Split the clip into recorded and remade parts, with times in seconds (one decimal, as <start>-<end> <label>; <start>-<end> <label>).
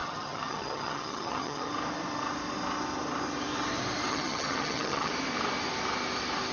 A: 0.0-1.7 remade; 1.7-4.1 recorded; 4.1-5.1 remade; 5.1-6.5 recorded